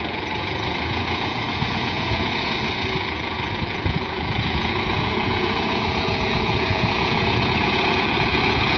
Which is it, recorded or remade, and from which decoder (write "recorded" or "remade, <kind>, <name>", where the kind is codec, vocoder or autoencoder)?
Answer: remade, vocoder, Vocos